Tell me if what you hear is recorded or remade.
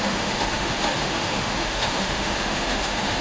remade